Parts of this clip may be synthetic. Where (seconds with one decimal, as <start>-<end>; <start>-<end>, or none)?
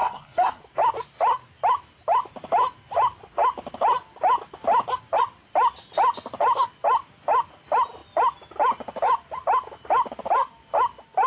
0.0-0.6